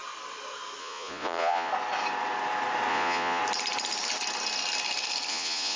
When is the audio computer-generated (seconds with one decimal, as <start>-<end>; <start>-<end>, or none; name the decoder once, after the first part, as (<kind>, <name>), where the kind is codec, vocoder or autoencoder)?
0.8-1.7 (vocoder, Vocos); 2.9-3.4; 5.3-5.8